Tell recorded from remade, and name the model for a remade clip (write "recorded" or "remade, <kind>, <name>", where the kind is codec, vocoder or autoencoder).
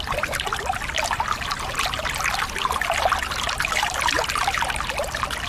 recorded